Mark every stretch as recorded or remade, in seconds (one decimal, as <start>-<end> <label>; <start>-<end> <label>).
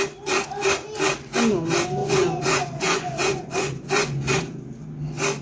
0.0-2.0 recorded; 2.0-4.3 remade; 4.3-5.4 recorded